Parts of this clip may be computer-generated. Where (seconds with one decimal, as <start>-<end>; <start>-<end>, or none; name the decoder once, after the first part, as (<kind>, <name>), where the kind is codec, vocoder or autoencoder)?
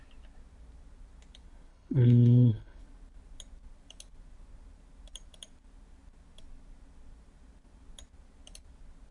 1.7-2.8 (codec, HILCodec)